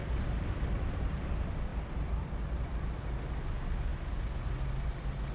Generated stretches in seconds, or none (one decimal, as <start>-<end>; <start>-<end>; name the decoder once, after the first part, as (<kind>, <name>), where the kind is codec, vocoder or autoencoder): none